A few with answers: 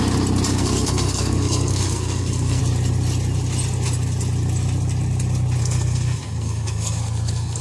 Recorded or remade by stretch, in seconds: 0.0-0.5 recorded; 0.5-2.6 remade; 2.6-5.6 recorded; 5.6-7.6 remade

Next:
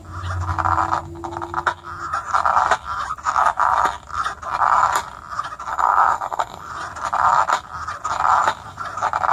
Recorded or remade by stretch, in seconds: 0.0-5.7 recorded; 5.7-6.7 remade; 6.7-9.3 recorded

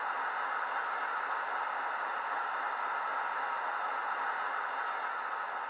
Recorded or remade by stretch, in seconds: 0.0-5.7 recorded

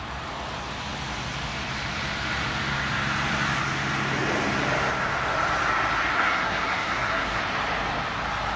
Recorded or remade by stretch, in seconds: 0.0-6.1 recorded; 6.1-7.4 remade; 7.4-8.6 recorded

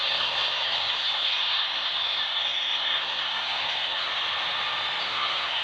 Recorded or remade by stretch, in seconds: 0.0-4.1 remade; 4.1-5.0 recorded; 5.0-5.6 remade

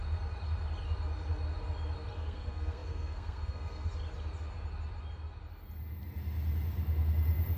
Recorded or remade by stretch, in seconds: 0.0-2.1 recorded; 2.1-3.9 remade; 3.9-7.6 recorded